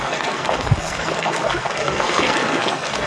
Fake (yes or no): yes